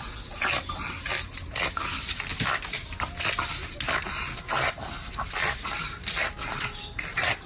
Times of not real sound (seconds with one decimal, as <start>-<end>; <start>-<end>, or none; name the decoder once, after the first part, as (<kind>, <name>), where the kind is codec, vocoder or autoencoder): none